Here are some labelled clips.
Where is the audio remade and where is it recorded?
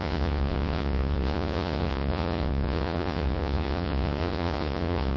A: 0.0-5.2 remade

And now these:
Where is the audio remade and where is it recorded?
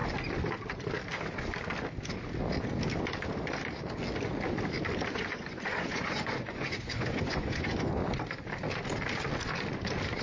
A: 0.0-5.1 recorded; 5.1-8.0 remade; 8.0-10.2 recorded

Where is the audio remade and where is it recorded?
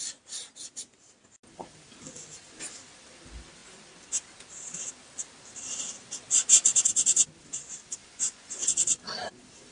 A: 0.0-8.0 recorded; 8.0-9.0 remade; 9.0-9.7 recorded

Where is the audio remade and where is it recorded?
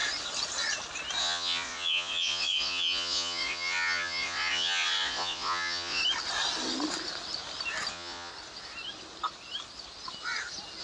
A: 0.0-1.2 recorded; 1.2-6.0 remade; 6.0-7.9 recorded; 7.9-8.3 remade; 8.3-10.8 recorded